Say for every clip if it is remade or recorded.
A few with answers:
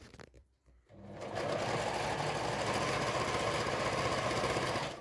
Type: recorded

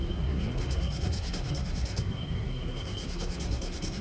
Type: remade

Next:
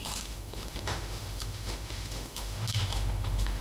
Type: remade